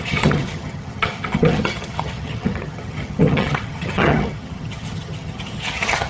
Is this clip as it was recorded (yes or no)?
no